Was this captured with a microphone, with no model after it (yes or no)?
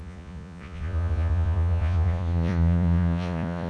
no